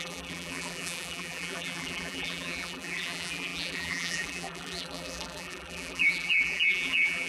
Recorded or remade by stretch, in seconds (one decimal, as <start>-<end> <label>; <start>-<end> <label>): 0.0-7.3 remade